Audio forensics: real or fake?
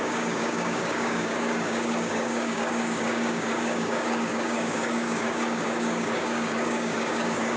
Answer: fake